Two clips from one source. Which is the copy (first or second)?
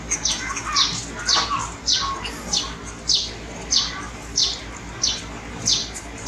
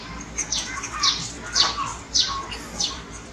second